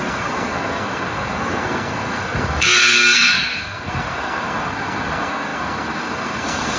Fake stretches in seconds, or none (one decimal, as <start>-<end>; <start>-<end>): 0.0-6.8